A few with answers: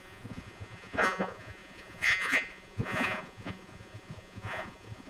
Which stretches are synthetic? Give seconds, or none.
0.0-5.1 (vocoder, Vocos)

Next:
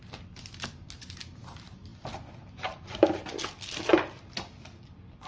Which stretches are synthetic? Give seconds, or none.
none